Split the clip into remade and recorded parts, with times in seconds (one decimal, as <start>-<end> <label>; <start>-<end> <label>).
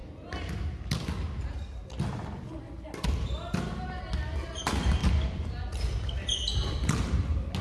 0.0-7.6 recorded